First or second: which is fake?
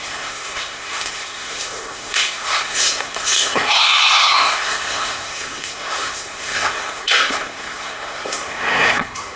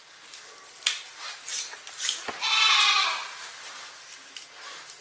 first